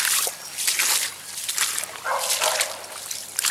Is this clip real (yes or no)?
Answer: yes